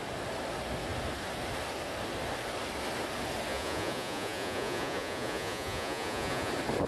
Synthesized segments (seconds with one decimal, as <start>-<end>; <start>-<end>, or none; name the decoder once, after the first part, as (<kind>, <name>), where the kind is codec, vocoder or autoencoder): 3.5-6.5 (vocoder, Vocos)